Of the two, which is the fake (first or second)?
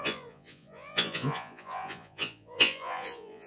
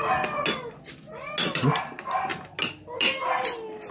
first